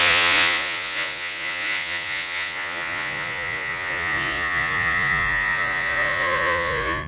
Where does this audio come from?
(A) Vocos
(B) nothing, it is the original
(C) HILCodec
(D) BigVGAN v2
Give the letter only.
A